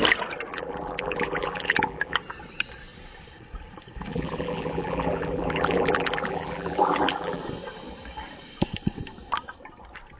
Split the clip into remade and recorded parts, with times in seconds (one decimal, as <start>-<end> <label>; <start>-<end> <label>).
0.0-0.5 recorded; 0.5-2.2 remade; 2.2-4.1 recorded; 4.1-7.4 remade; 7.4-10.2 recorded